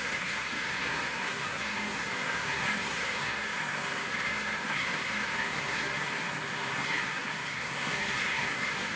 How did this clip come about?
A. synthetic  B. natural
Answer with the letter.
A